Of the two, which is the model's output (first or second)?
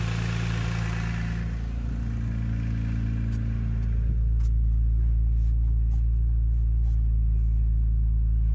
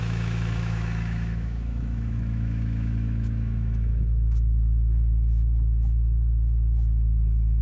second